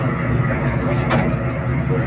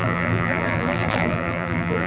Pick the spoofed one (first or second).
second